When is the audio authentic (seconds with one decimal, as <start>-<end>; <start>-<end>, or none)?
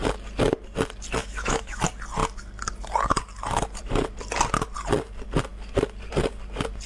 0.0-1.2; 1.8-6.9